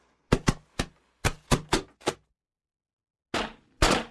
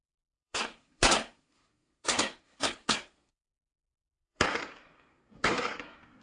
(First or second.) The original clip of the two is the first